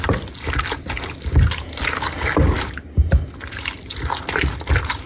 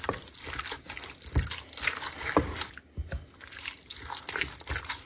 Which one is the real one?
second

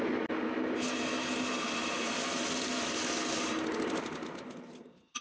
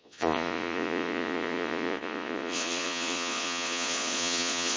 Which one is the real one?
first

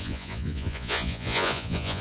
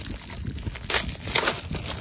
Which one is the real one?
second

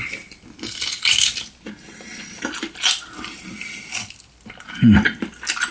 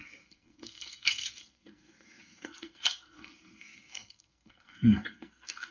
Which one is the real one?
first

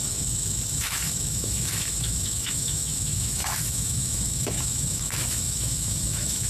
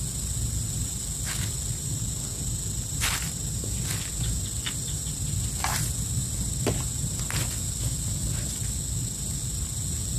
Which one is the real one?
second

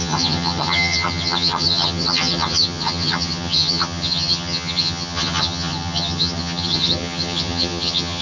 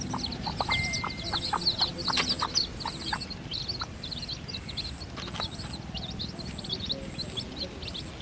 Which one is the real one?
second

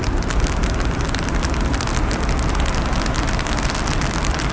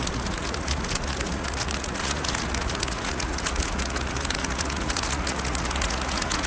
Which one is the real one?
first